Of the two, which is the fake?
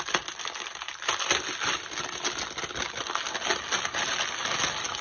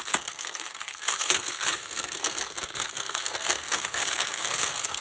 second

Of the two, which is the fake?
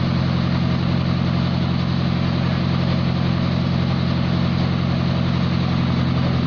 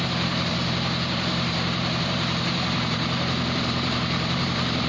second